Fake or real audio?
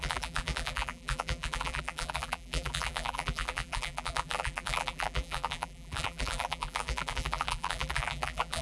fake